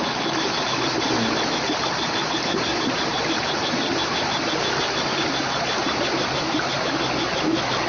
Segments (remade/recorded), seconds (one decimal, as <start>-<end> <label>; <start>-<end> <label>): 0.0-2.7 recorded; 2.7-4.5 remade; 4.5-5.1 recorded; 5.1-6.9 remade; 6.9-7.9 recorded